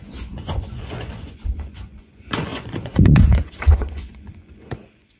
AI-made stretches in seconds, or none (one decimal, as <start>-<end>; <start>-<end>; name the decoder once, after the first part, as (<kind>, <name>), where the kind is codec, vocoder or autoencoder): 0.0-5.2 (vocoder, Vocos)